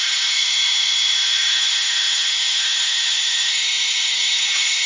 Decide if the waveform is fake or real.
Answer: fake